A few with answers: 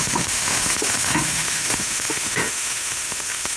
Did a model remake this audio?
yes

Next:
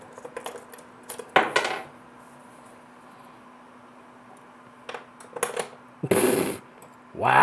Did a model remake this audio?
no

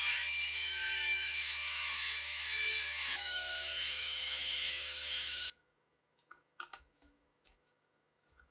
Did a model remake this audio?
yes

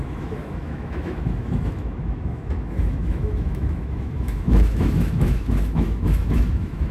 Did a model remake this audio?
yes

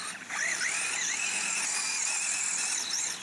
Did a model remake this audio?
no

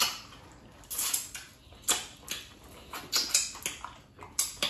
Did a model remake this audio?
no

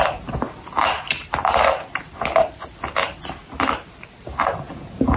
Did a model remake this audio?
no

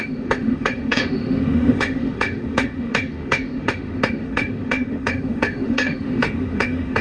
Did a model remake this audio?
yes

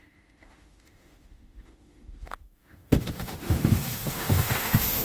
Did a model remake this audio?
yes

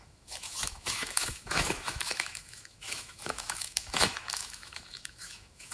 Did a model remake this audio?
yes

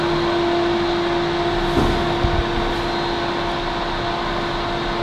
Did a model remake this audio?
no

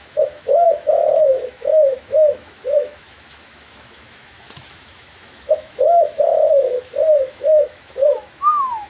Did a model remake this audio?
yes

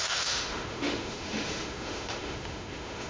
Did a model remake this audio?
yes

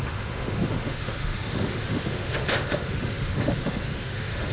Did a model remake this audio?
yes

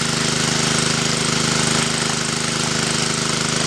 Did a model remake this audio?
no